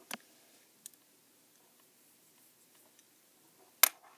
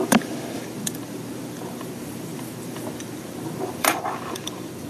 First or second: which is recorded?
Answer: first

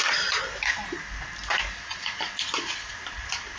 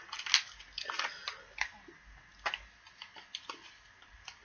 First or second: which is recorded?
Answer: second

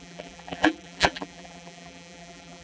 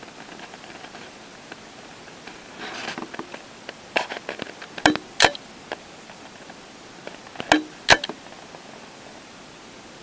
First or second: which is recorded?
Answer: second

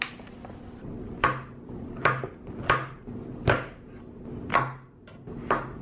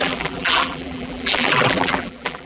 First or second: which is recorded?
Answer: first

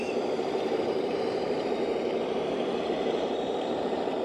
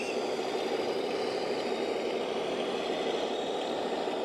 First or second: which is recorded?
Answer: second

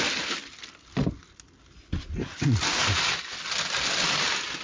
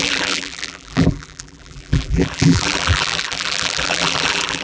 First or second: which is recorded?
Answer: first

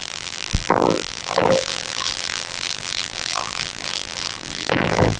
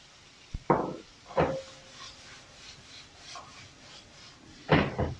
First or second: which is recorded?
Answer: second